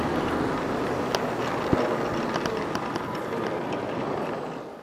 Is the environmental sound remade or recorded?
recorded